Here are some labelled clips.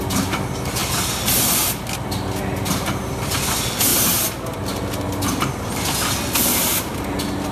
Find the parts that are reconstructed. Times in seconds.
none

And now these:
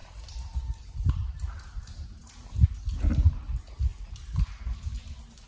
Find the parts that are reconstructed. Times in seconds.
0.0-3.3 (vocoder, BigVGAN v2); 3.9-5.0

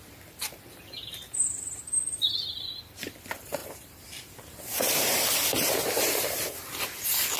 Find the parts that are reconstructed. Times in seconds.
3.6-6.6 (vocoder, BigVGAN v2)

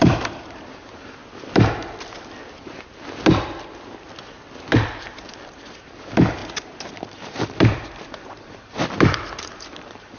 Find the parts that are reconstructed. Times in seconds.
0.0-1.2 (vocoder, BigVGAN v2); 5.1-10.2

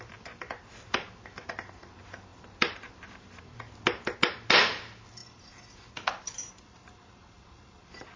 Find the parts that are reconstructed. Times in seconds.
2.3-3.7 (vocoder, BigVGAN v2); 5.2-6.5

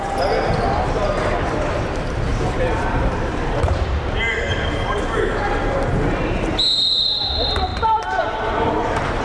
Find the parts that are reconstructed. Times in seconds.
2.3-3.9 (vocoder, BigVGAN v2); 7.7-9.2